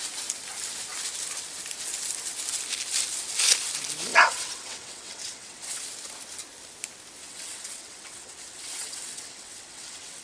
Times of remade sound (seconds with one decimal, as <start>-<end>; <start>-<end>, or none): 4.1-5.8; 7.2-10.2